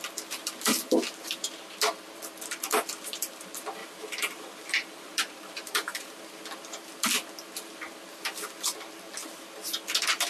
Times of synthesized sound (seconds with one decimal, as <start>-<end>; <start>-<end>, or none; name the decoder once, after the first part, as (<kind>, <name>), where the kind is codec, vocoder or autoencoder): 3.8-6.2 (vocoder, BigVGAN v2)